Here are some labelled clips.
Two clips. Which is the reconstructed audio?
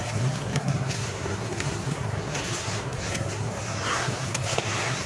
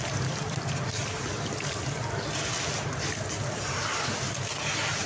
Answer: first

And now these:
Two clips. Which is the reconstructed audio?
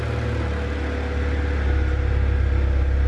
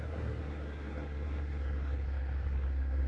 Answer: second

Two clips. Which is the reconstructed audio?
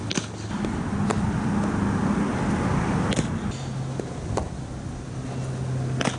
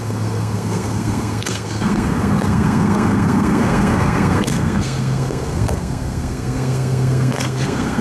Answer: second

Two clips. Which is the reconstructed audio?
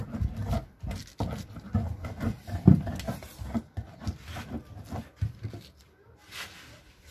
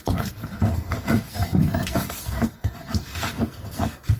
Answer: second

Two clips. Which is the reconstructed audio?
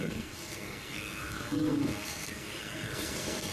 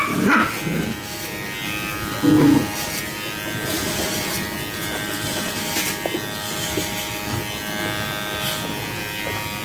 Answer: first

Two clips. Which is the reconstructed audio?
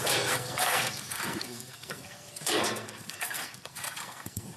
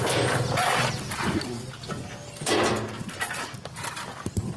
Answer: first